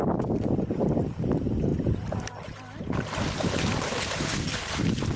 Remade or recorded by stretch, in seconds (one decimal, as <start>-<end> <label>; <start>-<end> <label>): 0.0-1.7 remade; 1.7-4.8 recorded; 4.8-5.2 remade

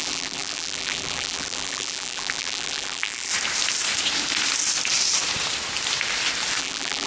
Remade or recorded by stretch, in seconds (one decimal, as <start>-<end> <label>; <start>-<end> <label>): 0.0-3.3 remade; 3.3-6.6 recorded; 6.6-7.1 remade

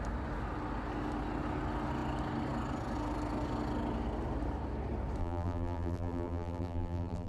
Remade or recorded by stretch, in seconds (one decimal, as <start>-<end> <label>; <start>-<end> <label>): 0.0-5.2 recorded; 5.2-7.3 remade

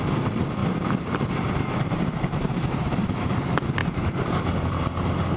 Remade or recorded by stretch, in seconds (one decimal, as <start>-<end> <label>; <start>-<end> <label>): 0.0-0.6 recorded; 0.6-3.3 remade; 3.3-3.8 recorded; 3.8-5.4 remade

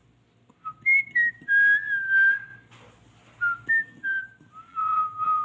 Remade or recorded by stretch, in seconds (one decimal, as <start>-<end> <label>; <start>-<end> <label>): 0.0-4.7 recorded; 4.7-5.4 remade